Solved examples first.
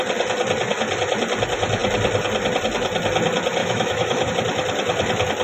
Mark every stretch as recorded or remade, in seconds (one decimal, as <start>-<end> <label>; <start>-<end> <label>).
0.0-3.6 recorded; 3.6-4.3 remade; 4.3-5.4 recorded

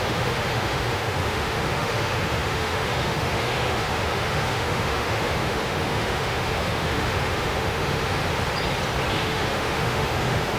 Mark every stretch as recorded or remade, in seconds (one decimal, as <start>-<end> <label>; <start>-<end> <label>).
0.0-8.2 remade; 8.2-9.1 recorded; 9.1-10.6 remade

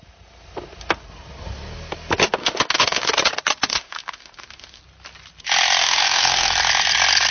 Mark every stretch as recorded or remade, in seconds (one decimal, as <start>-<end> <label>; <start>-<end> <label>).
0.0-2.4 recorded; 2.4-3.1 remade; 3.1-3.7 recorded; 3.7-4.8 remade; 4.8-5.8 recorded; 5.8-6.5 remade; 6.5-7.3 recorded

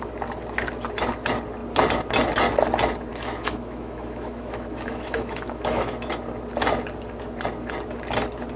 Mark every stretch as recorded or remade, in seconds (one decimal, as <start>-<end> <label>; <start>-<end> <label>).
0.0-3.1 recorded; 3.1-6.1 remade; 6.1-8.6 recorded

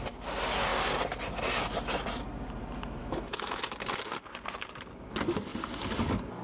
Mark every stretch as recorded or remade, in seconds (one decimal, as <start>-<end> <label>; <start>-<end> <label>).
0.0-3.0 recorded; 3.0-3.6 remade; 3.6-6.4 recorded

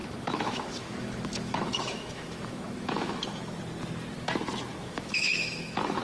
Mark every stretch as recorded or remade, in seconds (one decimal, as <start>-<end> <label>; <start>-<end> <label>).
0.0-3.6 remade; 3.6-4.7 recorded; 4.7-6.0 remade

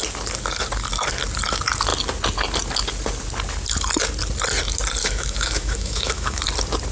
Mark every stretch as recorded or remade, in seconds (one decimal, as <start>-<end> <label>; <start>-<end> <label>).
0.0-5.0 recorded; 5.0-6.4 remade; 6.4-6.9 recorded

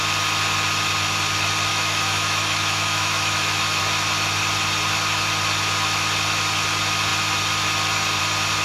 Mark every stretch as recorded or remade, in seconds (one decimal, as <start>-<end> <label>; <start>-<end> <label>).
0.0-1.7 recorded; 1.7-3.8 remade; 3.8-8.6 recorded